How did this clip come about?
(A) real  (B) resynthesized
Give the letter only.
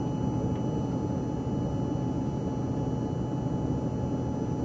A